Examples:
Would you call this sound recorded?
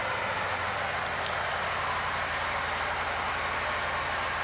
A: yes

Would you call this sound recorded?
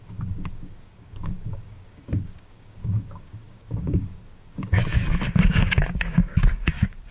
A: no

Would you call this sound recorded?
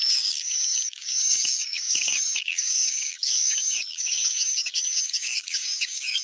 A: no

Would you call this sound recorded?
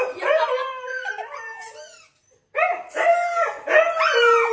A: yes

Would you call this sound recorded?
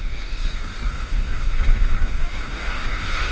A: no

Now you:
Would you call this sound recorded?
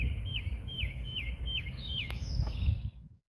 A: no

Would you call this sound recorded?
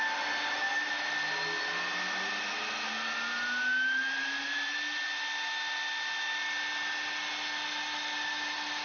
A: yes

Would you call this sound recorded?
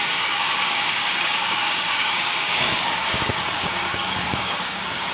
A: no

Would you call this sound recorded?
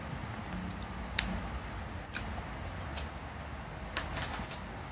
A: yes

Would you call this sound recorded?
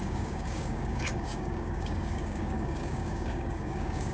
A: no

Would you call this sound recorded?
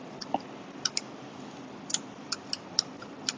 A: yes